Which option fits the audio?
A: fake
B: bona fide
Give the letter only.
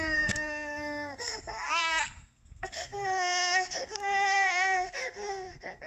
A